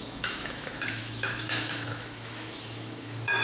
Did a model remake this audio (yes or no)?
yes